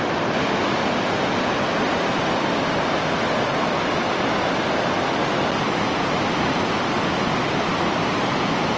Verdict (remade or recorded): recorded